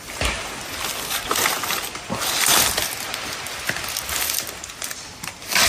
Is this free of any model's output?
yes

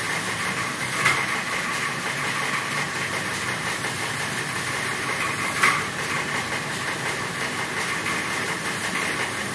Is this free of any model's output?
yes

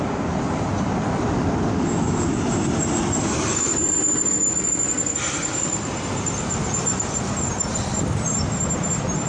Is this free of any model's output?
no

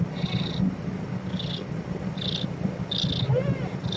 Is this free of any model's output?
yes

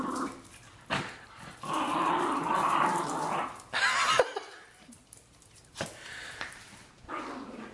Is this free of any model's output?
no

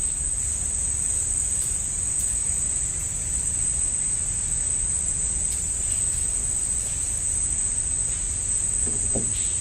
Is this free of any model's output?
yes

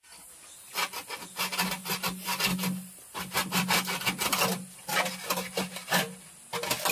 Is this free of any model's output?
yes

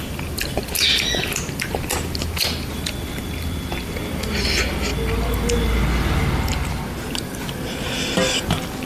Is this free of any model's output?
yes